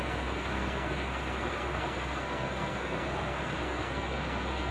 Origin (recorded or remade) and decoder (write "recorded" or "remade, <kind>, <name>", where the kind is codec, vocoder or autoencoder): remade, codec, SNAC